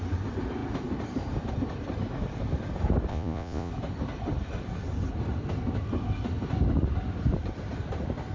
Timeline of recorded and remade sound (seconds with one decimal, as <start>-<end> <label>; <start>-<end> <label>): 0.0-3.1 recorded; 3.1-3.7 remade; 3.7-8.3 recorded